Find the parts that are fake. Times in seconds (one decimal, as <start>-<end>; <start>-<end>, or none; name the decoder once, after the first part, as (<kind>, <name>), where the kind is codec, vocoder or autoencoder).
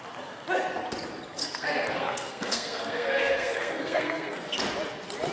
1.4-4.6 (codec, SNAC)